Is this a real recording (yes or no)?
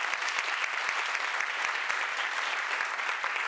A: yes